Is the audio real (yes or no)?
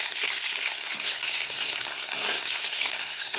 no